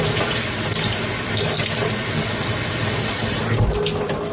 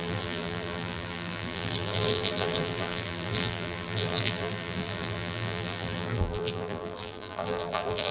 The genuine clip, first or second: first